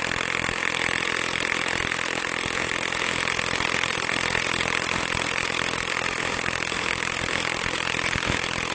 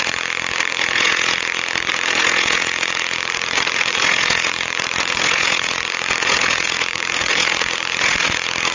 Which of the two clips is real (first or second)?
first